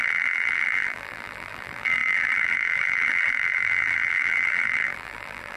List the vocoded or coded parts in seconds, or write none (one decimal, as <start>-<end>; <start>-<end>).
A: 0.0-5.6